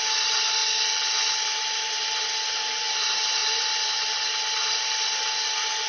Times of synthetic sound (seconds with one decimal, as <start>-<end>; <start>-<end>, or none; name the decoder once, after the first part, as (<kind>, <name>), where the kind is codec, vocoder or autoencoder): none